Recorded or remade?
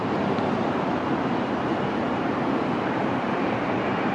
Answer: remade